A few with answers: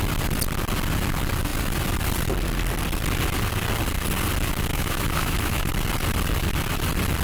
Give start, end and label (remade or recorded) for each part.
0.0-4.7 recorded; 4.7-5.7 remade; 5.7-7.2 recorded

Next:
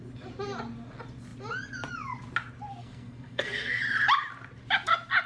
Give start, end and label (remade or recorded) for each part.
0.0-2.8 recorded; 2.8-3.8 remade; 3.8-5.3 recorded